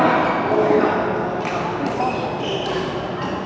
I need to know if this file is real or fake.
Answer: real